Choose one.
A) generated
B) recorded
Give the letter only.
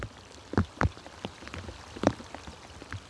B